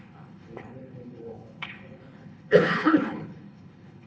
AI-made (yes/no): yes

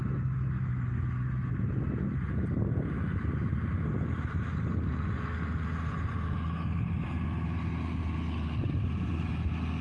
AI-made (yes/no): no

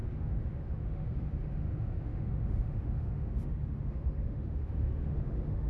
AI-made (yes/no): yes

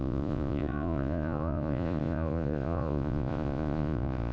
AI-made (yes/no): yes